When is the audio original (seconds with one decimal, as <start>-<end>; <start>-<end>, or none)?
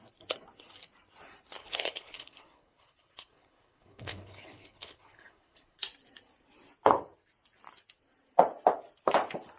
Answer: 0.0-1.6; 5.8-9.6